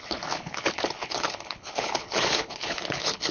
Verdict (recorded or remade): remade